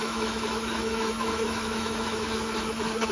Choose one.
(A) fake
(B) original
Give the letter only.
A